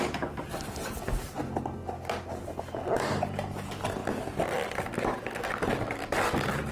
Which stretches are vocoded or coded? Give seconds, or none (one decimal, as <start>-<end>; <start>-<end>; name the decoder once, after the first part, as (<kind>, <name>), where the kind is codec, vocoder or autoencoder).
none